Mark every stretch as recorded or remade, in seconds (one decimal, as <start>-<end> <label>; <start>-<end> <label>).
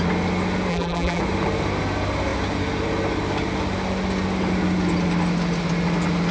0.0-0.7 recorded; 0.7-1.2 remade; 1.2-6.3 recorded